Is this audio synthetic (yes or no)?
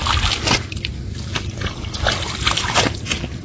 no